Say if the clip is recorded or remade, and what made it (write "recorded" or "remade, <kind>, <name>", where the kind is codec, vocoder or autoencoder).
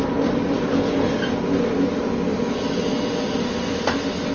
recorded